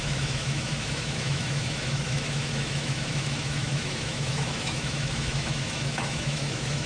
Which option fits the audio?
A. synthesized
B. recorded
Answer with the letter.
A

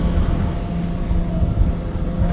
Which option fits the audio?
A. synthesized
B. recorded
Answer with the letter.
B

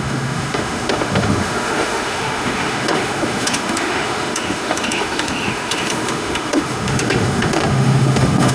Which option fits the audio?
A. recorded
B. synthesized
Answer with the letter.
B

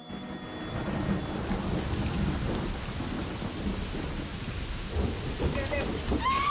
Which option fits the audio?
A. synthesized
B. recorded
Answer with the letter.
B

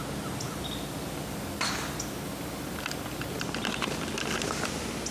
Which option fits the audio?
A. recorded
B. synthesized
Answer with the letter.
A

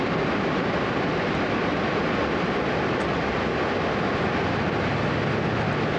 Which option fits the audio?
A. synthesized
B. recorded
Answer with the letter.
B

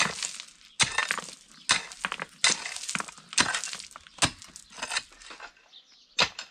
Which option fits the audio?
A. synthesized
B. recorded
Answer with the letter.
B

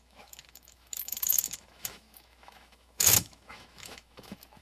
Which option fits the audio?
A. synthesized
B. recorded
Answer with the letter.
A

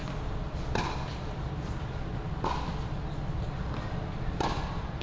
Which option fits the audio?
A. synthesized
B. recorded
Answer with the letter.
B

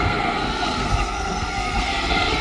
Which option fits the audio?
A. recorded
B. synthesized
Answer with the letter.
B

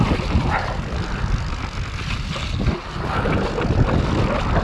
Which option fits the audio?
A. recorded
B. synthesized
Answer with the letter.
A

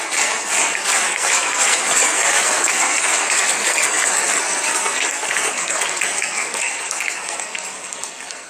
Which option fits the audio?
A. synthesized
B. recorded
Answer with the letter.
A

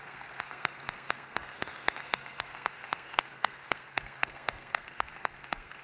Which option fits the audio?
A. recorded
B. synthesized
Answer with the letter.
B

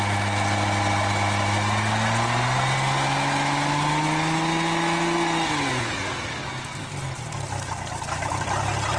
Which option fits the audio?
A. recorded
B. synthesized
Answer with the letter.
A